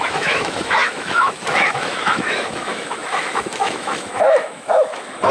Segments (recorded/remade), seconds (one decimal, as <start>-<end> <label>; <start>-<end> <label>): 0.0-5.3 remade